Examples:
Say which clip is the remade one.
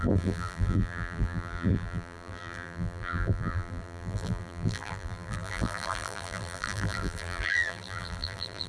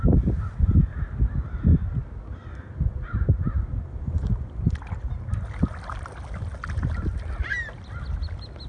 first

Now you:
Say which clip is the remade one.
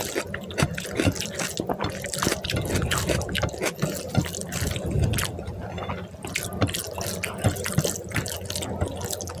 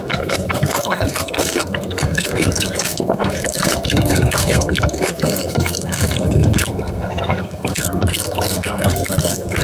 second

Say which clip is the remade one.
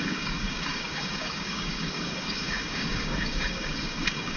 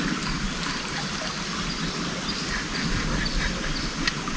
first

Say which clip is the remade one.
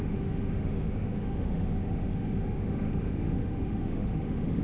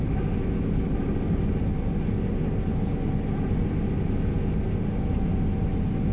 first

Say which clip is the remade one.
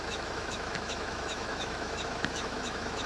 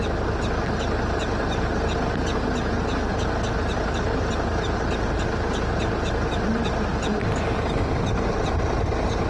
first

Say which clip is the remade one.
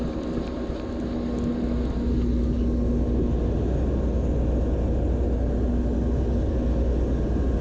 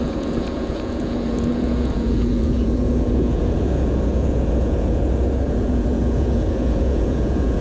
second